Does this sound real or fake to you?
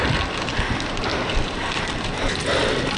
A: real